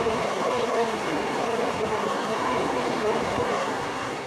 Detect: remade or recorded remade